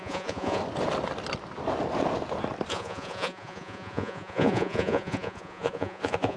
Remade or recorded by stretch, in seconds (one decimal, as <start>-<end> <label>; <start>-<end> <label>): 0.0-0.6 remade; 0.6-2.7 recorded; 2.7-6.4 remade